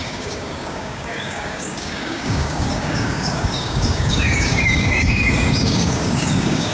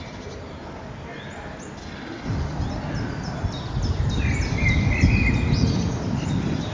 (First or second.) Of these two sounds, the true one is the second